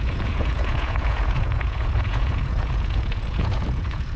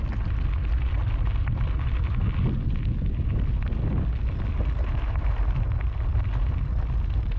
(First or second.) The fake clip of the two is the first